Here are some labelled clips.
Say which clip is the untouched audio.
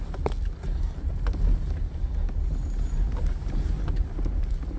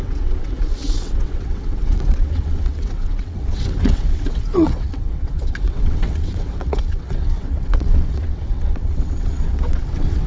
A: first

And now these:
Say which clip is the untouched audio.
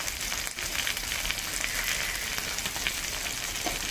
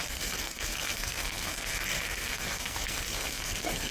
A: first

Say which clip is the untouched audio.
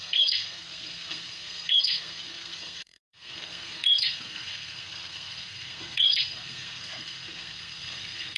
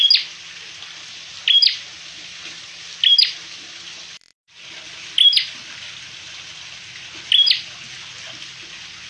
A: second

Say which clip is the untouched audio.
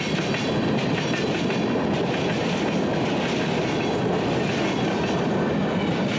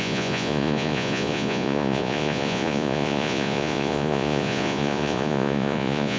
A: first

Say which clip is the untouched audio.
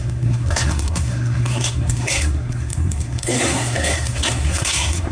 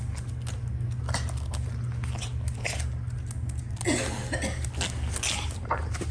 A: second